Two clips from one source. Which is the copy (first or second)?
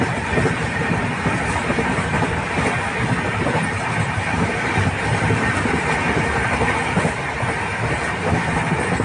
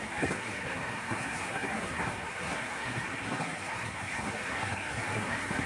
second